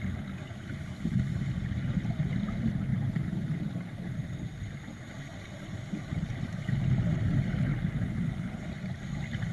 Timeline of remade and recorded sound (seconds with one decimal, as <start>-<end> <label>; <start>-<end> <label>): 0.0-2.9 recorded; 2.9-4.6 remade; 4.6-5.3 recorded; 5.3-6.6 remade; 6.6-9.5 recorded